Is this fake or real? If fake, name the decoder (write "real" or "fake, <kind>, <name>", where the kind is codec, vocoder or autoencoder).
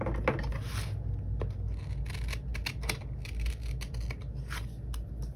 real